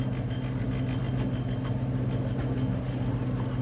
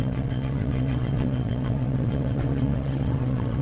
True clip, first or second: first